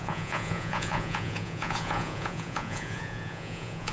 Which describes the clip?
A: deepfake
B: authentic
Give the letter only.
A